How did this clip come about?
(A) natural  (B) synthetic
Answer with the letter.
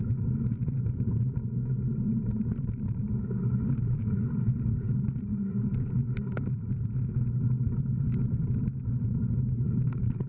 B